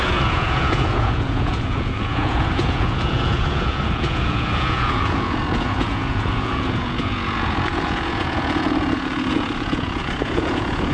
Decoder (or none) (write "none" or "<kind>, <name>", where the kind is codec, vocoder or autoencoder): vocoder, Vocos